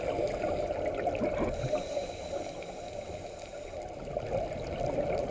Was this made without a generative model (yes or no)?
yes